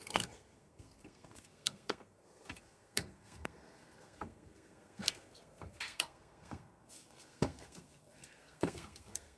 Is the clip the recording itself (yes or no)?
no